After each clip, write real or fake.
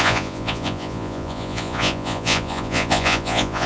fake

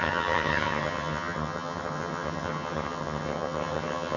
fake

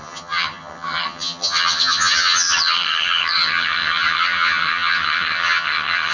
fake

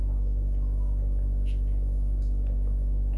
real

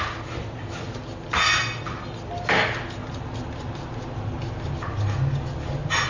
real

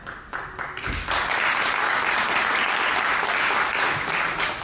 real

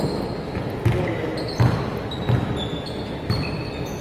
real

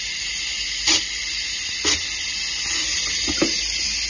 real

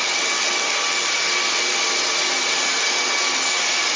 real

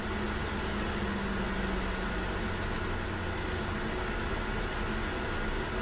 real